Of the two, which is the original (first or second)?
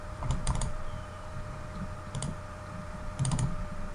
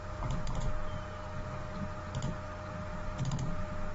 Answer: second